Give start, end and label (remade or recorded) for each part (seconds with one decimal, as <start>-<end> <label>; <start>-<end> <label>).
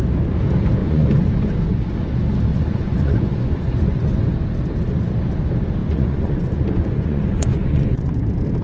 0.0-0.8 recorded; 0.8-1.3 remade; 1.3-2.5 recorded; 2.5-4.3 remade; 4.3-5.8 recorded; 5.8-8.2 remade; 8.2-8.6 recorded